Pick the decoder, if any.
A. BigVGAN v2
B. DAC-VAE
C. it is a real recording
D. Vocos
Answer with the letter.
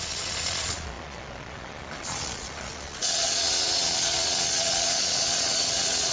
D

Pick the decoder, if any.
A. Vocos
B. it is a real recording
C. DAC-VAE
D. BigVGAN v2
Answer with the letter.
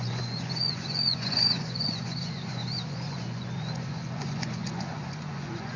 A